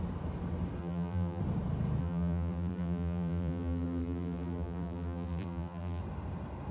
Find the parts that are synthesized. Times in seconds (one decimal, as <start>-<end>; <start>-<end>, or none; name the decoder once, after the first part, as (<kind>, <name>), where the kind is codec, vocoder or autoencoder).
0.8-1.4 (vocoder, BigVGAN v2); 2.0-6.0